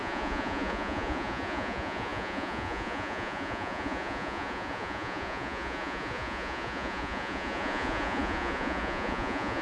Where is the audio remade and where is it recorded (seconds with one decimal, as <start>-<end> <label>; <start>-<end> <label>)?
0.0-9.6 remade